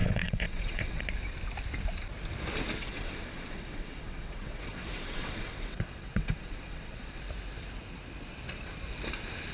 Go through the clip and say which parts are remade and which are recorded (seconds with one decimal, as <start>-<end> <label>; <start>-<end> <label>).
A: 0.0-1.0 remade; 1.0-2.8 recorded; 2.8-7.2 remade; 7.2-9.5 recorded